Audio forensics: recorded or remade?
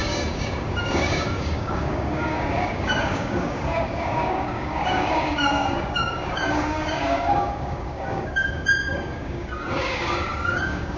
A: remade